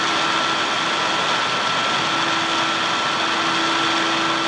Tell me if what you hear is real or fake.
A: real